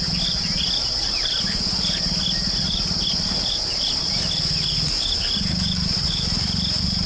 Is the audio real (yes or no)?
yes